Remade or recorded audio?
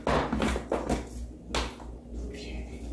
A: recorded